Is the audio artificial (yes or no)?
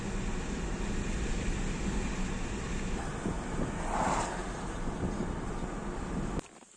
no